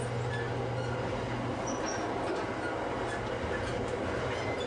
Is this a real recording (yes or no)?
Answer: yes